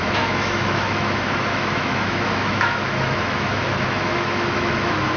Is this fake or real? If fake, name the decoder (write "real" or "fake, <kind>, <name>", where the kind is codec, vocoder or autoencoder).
fake, autoencoder, DAC-VAE